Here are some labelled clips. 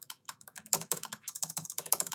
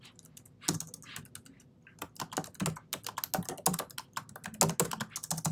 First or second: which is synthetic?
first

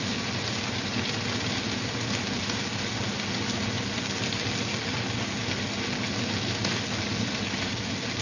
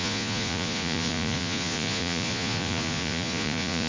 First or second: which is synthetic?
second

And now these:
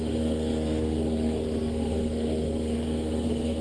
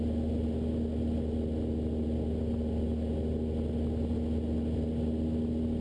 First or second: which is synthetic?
first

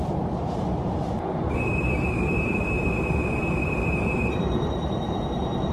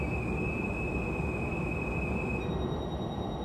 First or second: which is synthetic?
first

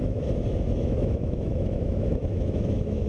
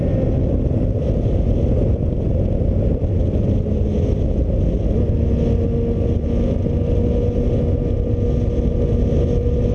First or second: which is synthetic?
first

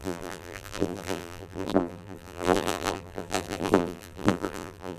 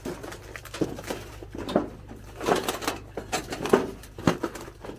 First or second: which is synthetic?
first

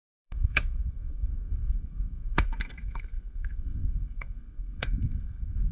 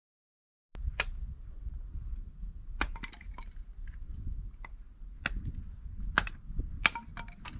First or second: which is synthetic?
first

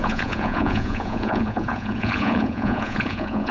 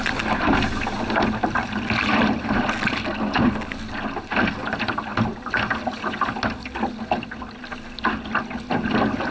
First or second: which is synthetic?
first